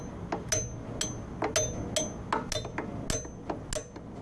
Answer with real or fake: real